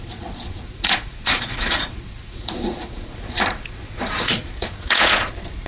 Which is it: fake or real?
fake